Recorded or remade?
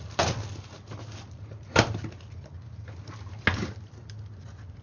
recorded